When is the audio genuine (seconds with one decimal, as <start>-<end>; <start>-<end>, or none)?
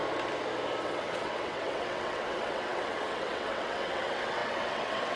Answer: 0.0-0.8